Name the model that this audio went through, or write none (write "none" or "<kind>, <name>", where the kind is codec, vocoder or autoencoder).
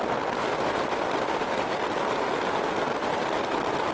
none